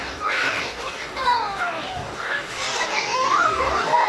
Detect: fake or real fake